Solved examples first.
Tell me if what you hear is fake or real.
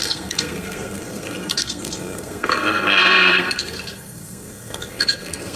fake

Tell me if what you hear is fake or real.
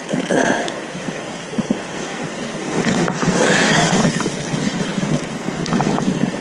fake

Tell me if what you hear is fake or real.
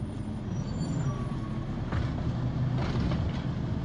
real